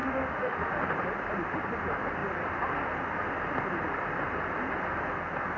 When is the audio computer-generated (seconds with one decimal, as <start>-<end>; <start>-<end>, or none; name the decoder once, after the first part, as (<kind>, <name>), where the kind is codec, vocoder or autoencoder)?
0.0-0.7 (autoencoder, DAC-VAE)